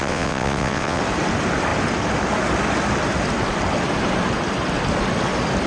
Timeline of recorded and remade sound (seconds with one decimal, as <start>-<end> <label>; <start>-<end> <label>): 0.0-1.0 remade; 1.0-5.7 recorded